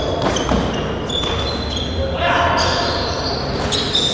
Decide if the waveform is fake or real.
real